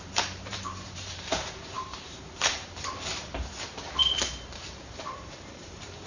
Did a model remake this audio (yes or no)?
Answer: yes